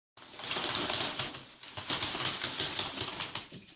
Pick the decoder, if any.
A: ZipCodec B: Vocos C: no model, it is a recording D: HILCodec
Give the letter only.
C